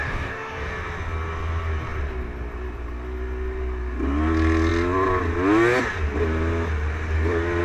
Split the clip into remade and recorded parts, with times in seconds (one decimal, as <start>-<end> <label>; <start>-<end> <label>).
0.0-0.7 remade; 0.7-7.6 recorded